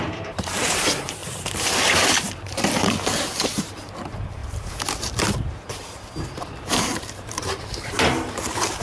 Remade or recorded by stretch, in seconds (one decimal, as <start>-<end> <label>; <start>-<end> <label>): 0.0-8.8 remade

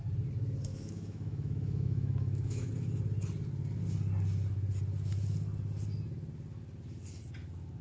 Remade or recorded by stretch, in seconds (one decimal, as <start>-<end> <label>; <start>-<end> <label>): 0.0-0.7 recorded; 0.7-2.7 remade; 2.7-7.8 recorded

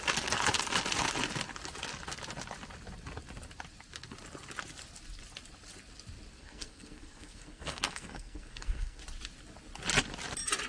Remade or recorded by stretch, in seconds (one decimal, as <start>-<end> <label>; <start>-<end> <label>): 0.0-6.3 recorded; 6.3-9.0 remade; 9.0-10.7 recorded

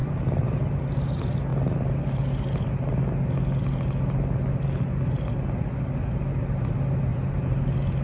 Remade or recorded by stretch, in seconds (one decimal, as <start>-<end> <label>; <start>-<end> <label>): 0.0-0.8 remade; 0.8-7.1 recorded; 7.1-7.6 remade; 7.6-8.0 recorded

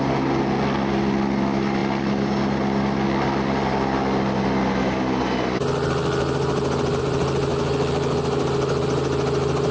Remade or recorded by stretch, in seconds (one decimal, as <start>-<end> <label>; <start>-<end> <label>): 0.0-9.7 recorded

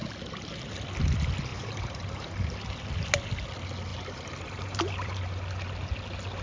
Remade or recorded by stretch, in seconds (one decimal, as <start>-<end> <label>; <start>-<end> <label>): 0.0-1.5 recorded; 1.5-2.3 remade; 2.3-3.9 recorded; 3.9-5.2 remade; 5.2-6.4 recorded

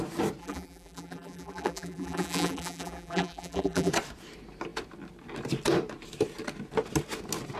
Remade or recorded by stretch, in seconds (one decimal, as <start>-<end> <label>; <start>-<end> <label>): 0.0-0.4 recorded; 0.4-3.9 remade; 3.9-7.6 recorded

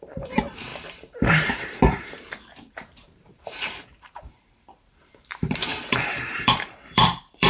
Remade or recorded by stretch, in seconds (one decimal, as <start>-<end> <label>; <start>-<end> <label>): 0.0-7.5 remade